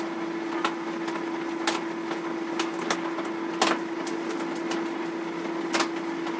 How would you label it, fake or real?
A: real